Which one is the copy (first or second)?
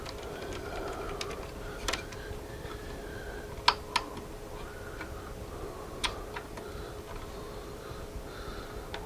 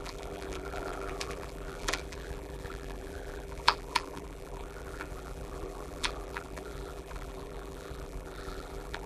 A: second